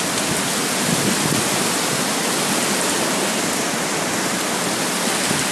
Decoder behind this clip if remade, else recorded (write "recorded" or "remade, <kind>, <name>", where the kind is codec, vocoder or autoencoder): recorded